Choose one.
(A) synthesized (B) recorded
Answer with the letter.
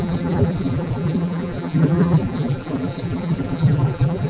A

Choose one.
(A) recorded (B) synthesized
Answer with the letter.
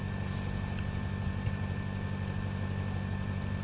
A